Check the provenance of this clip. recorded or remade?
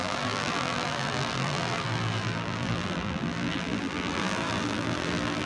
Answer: remade